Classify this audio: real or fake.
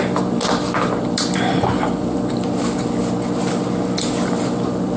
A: real